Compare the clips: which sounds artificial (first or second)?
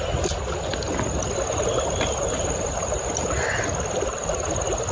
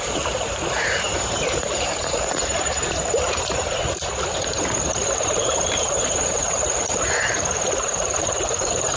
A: second